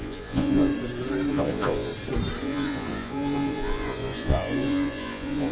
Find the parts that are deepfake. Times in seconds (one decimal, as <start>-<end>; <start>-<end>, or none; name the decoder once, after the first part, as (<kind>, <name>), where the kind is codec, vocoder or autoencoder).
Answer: 0.0-0.7 (vocoder, Vocos); 1.3-1.9; 2.4-5.5